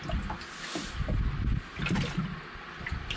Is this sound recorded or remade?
recorded